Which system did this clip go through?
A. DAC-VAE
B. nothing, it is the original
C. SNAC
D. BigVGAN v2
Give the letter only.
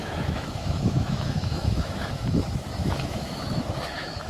A